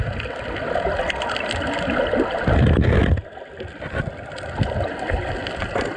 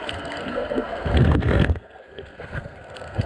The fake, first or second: second